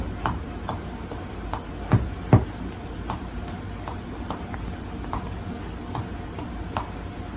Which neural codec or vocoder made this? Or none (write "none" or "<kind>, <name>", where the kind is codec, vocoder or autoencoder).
none